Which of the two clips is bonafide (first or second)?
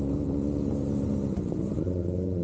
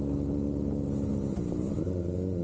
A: second